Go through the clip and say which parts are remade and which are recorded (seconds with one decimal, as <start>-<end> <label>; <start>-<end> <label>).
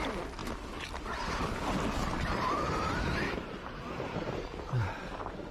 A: 0.0-0.4 recorded; 0.4-1.6 remade; 1.6-2.0 recorded; 2.0-5.0 remade; 5.0-5.5 recorded